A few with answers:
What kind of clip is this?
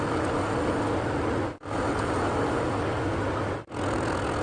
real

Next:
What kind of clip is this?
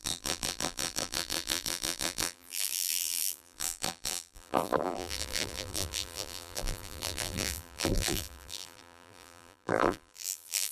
fake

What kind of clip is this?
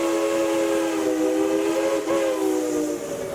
real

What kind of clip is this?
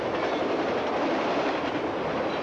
real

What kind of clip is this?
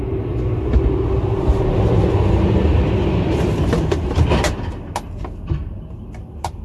real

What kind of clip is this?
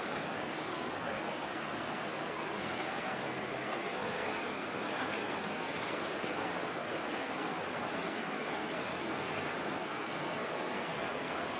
fake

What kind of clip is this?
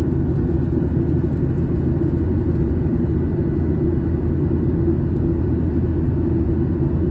real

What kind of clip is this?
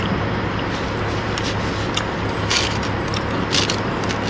real